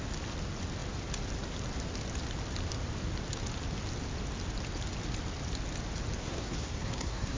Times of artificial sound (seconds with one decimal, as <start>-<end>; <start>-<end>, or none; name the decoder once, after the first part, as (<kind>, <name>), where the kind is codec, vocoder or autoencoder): 6.2-7.4 (codec, SNAC)